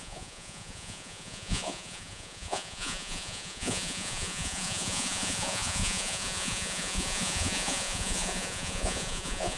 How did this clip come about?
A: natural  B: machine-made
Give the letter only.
B